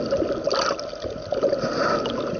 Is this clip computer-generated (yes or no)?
no